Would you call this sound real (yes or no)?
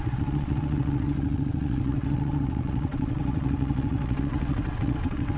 no